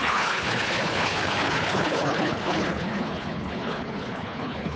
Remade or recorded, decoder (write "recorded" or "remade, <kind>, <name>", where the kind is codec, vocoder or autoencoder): remade, codec, HILCodec